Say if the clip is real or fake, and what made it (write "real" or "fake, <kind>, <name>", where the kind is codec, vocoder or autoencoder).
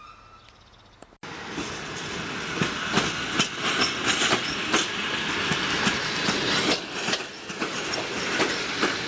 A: real